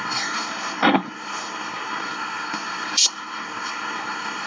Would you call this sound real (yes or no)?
no